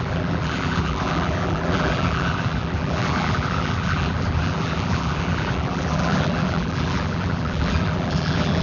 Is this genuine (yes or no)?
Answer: no